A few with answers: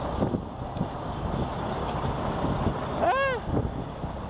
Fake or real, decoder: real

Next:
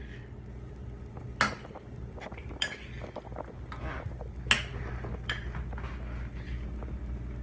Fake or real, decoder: real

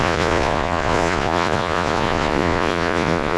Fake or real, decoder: fake, vocoder, Vocos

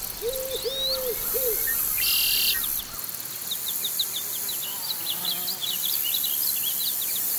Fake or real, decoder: real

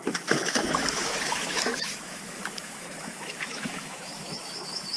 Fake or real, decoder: fake, autoencoder, DAC-VAE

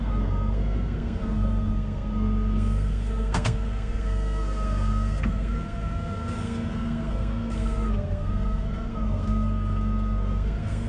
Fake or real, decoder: fake, codec, SNAC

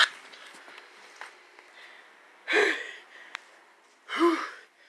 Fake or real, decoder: real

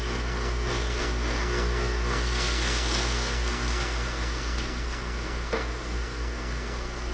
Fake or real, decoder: fake, codec, SNAC